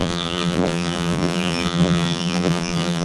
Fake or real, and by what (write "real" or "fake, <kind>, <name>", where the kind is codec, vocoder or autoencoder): fake, vocoder, BigVGAN v2